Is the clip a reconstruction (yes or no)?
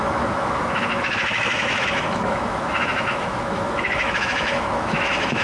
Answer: yes